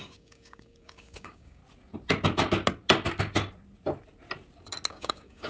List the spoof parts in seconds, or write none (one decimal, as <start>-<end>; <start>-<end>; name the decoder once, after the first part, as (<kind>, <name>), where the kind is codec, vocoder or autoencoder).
0.0-1.6 (codec, DAC); 4.9-5.5